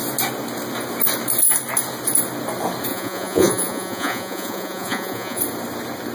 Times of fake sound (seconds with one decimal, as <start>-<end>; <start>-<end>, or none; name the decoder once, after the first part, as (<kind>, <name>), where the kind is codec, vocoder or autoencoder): 2.9-5.4 (vocoder, Vocos)